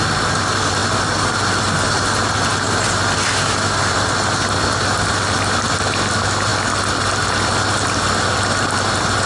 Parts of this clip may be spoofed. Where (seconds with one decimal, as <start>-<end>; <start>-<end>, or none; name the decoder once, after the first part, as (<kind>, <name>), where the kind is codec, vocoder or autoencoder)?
none